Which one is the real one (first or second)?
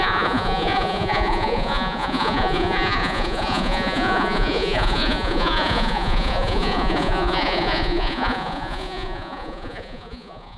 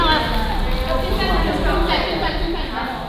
second